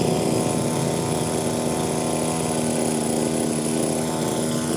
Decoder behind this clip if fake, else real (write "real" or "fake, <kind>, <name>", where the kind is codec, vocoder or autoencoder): real